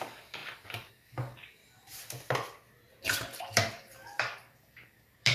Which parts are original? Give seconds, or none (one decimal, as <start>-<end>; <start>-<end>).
1.6-3.4